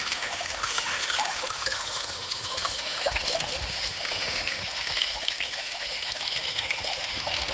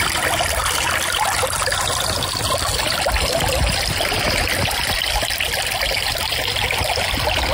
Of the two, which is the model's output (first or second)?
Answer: first